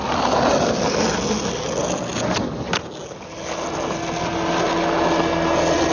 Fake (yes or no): no